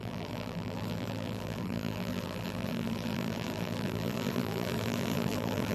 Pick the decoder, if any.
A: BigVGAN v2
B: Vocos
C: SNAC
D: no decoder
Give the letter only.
A